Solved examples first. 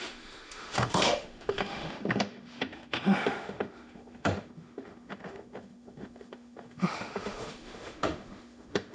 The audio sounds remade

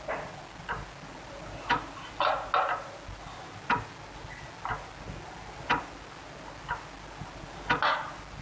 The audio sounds recorded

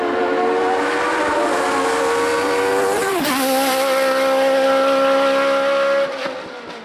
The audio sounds recorded